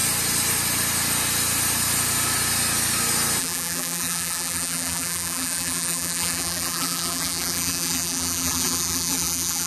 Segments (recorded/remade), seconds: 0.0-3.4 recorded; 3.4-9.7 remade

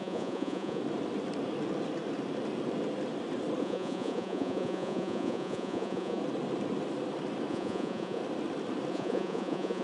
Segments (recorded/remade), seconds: 0.0-0.8 remade; 0.8-3.6 recorded; 3.6-6.2 remade; 6.2-7.5 recorded; 7.5-8.2 remade; 8.2-8.9 recorded; 8.9-9.8 remade

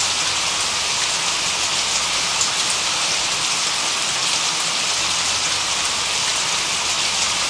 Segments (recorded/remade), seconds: 0.0-7.5 recorded

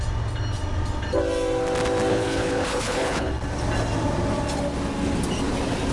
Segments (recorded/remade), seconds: 0.0-2.1 recorded; 2.1-3.3 remade; 3.3-5.9 recorded

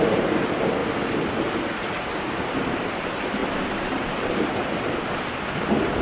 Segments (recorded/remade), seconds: 0.0-6.0 recorded

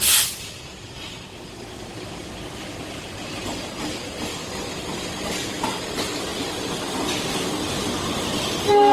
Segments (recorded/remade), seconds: 0.0-8.9 recorded

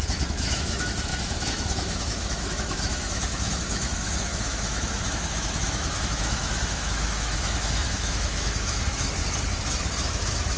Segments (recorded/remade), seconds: 0.0-9.2 remade; 9.2-10.0 recorded; 10.0-10.6 remade

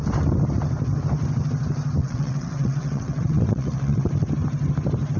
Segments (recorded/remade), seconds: 0.0-2.0 recorded; 2.0-4.1 remade; 4.1-5.2 recorded